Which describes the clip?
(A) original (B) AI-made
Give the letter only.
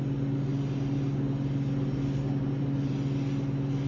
A